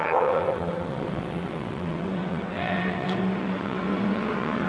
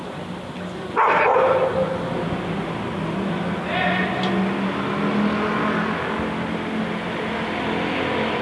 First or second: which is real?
second